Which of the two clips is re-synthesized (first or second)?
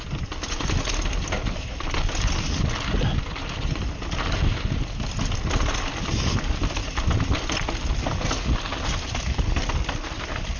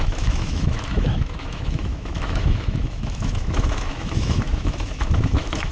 second